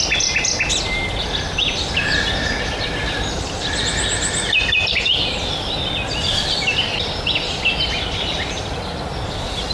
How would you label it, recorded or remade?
recorded